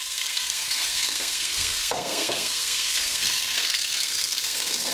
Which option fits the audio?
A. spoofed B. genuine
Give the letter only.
A